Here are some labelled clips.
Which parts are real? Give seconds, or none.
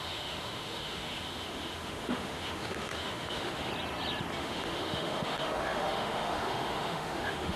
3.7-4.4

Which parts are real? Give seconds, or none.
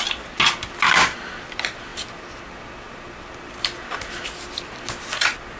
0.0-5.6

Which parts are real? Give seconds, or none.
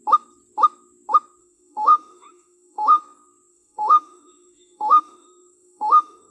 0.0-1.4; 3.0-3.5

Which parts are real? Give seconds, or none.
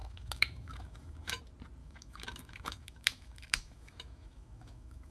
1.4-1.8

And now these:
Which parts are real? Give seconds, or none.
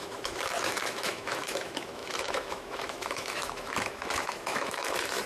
none